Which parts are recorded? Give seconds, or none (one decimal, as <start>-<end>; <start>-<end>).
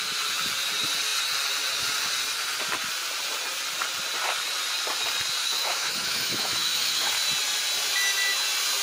0.0-5.4; 7.1-8.8